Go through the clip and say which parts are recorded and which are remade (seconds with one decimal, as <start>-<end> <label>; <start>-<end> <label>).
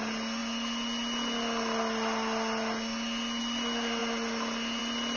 0.0-5.2 recorded